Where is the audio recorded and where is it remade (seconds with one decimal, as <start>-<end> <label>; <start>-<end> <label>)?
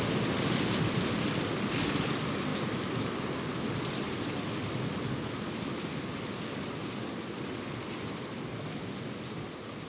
0.0-9.9 recorded